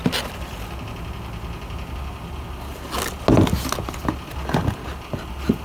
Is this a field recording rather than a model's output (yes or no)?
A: yes